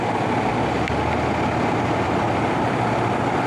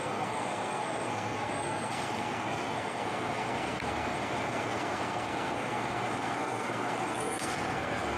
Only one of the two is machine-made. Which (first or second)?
second